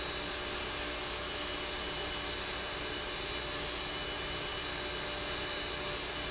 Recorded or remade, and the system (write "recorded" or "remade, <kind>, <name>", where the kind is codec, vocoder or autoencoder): recorded